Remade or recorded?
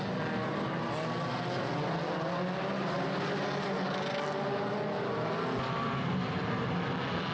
recorded